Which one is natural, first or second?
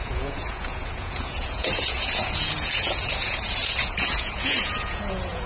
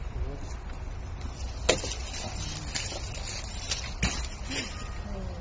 second